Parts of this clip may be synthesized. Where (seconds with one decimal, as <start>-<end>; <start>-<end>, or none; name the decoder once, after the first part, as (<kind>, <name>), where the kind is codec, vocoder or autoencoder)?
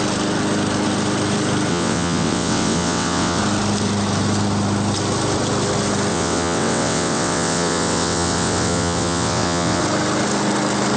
1.7-3.4 (vocoder, WaveNeXt); 6.1-9.8